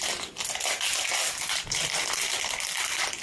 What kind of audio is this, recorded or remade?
recorded